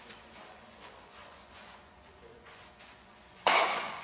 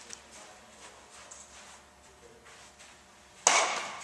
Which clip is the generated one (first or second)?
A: first